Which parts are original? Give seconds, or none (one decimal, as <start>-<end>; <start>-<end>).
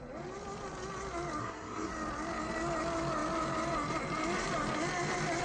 0.0-1.4; 1.9-5.4